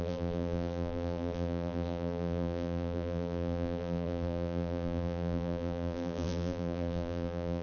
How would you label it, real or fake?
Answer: fake